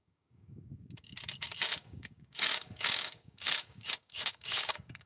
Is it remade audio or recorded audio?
remade